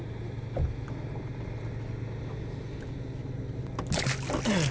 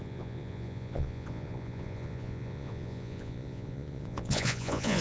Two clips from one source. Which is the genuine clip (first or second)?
first